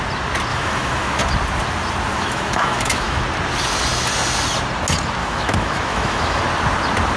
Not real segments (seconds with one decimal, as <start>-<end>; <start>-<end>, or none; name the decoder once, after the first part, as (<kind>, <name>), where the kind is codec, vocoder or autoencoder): 0.5-1.2 (autoencoder, DAC-VAE); 2.1-3.2; 5.2-6.4